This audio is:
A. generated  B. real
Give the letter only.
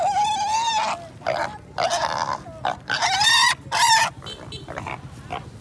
B